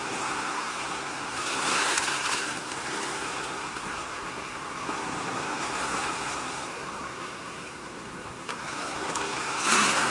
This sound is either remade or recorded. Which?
remade